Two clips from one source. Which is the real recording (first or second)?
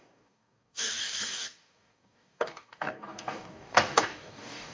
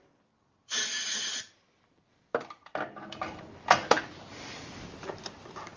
second